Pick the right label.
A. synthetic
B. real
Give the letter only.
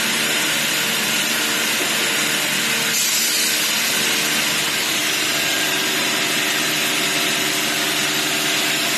B